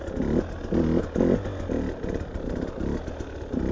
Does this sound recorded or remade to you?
recorded